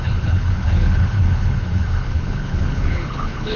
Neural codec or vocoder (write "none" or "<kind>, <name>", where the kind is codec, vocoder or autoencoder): codec, HILCodec